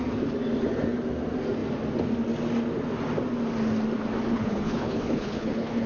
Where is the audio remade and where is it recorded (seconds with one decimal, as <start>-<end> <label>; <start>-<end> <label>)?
0.0-4.3 recorded; 4.3-5.9 remade